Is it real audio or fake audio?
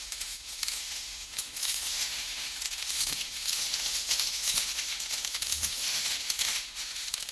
fake